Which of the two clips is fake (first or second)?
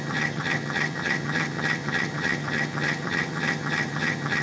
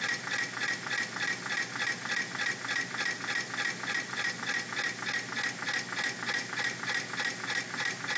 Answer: first